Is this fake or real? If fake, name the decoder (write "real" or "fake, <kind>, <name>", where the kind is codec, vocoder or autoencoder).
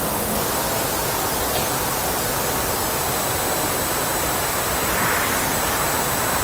real